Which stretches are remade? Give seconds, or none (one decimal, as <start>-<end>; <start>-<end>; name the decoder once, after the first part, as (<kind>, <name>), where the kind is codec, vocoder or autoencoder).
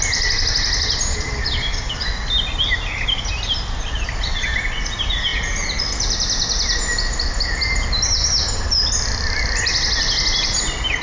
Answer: none